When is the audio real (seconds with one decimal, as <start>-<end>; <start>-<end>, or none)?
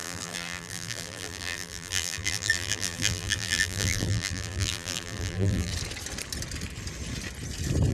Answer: 5.7-7.9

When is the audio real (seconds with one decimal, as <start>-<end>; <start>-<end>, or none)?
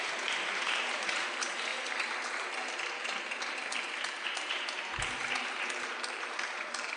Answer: 1.7-4.5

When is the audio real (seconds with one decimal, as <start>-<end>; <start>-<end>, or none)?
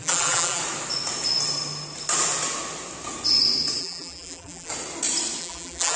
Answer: 0.6-3.8; 4.7-5.4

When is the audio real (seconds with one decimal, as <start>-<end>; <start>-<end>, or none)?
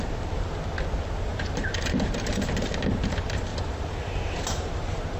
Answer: 0.0-1.3; 2.4-3.5